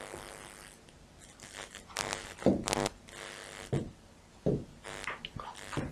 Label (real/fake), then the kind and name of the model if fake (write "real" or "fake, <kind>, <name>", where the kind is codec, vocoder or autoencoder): real